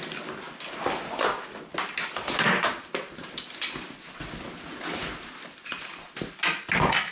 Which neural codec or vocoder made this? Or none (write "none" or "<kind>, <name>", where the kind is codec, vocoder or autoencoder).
none